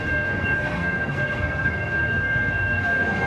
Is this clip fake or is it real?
fake